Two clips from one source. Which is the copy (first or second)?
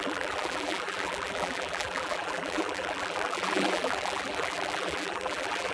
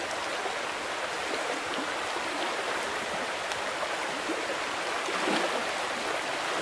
first